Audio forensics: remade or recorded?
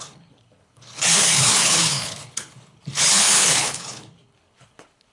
remade